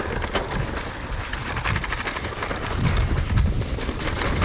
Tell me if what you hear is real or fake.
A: real